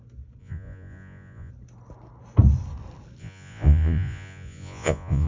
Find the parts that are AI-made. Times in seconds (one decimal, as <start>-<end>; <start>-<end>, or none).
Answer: 0.4-1.5; 3.2-5.3